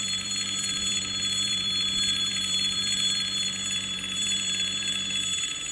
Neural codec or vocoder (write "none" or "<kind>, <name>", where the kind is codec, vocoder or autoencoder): vocoder, BigVGAN v2